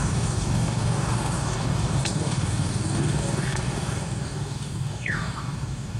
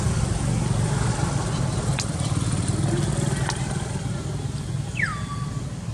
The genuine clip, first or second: second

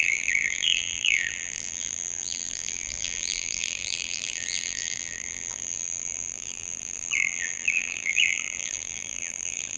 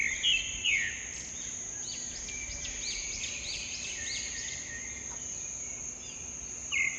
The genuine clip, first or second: second